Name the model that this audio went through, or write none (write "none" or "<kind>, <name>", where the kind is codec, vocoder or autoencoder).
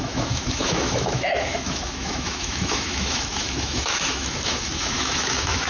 autoencoder, DAC-VAE